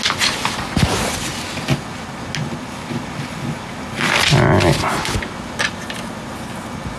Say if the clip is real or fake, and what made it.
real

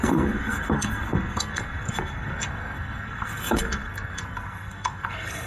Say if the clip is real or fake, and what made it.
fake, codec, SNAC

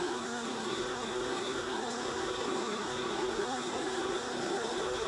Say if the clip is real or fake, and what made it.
fake, codec, SNAC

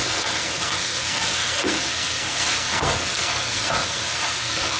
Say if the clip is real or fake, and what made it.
fake, codec, SNAC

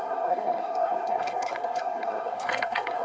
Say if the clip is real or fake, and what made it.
fake, codec, SNAC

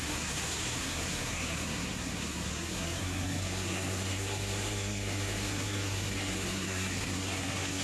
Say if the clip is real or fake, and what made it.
fake, codec, SNAC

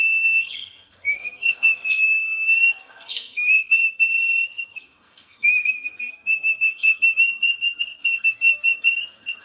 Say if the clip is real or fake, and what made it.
fake, codec, SNAC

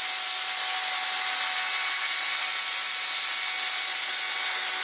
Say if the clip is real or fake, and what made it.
real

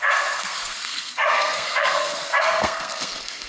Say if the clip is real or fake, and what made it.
fake, codec, SNAC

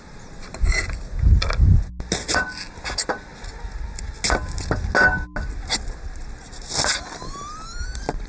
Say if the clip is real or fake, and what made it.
real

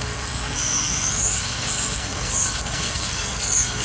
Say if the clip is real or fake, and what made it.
fake, codec, SNAC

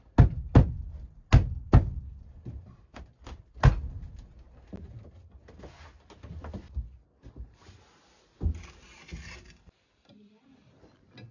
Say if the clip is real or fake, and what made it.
real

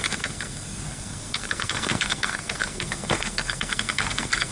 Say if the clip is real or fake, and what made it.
fake, codec, SNAC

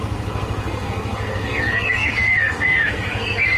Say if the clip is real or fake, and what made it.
fake, codec, SNAC